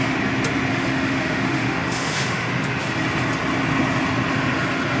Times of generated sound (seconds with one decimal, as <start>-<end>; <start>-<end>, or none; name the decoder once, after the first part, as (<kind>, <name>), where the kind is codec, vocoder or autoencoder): 0.7-2.5 (autoencoder, DAC-VAE)